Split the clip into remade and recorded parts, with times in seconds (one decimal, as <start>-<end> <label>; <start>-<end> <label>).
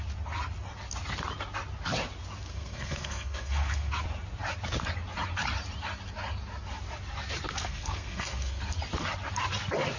0.0-2.5 recorded; 2.5-3.9 remade; 3.9-7.6 recorded; 7.6-8.6 remade; 8.6-10.0 recorded